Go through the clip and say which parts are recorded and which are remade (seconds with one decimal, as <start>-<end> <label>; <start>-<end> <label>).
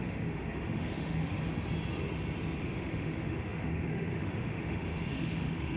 0.0-1.4 remade; 1.4-2.6 recorded; 2.6-5.8 remade